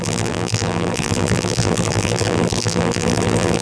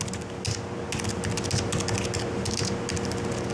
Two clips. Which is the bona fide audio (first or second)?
second